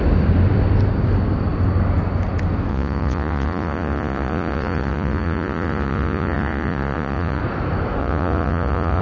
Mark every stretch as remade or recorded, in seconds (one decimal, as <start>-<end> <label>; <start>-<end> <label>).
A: 0.0-2.7 recorded; 2.7-7.4 remade; 7.4-8.0 recorded; 8.0-9.0 remade